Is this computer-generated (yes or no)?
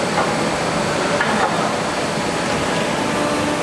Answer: no